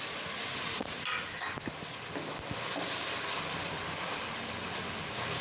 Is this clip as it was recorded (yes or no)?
yes